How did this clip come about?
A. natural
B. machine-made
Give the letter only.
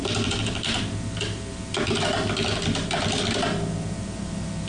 A